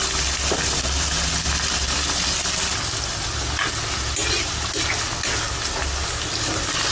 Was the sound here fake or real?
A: real